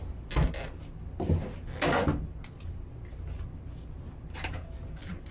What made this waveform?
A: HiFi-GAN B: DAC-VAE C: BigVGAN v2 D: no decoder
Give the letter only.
D